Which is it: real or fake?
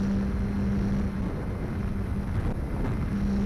real